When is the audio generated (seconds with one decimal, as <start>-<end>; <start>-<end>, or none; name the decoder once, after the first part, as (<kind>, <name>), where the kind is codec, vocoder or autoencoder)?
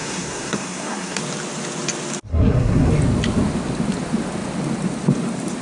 0.0-1.2 (codec, SNAC); 2.3-2.9